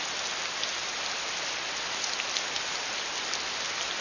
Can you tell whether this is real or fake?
real